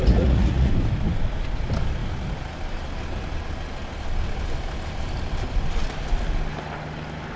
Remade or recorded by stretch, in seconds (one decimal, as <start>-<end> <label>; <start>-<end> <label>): 0.0-0.7 remade; 0.7-7.4 recorded